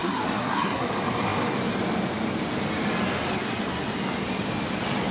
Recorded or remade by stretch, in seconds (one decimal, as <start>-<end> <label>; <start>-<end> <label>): 0.0-0.9 remade; 0.9-5.1 recorded